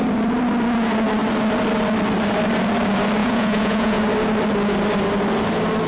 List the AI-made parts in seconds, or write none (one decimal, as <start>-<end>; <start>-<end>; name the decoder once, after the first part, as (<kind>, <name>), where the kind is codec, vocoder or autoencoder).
3.2-4.0 (vocoder, Vocos)